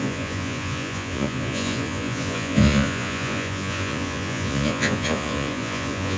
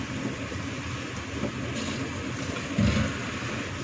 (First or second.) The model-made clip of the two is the first